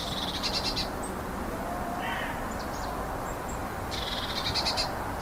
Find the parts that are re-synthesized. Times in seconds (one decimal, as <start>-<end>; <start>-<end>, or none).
0.0-0.9; 3.6-4.5